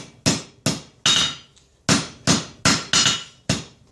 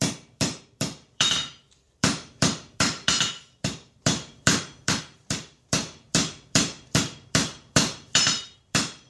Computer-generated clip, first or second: second